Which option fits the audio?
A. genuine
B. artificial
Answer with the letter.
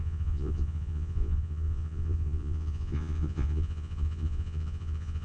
B